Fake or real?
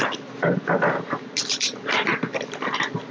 fake